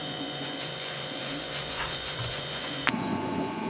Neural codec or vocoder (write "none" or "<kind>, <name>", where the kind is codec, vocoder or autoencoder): vocoder, Vocos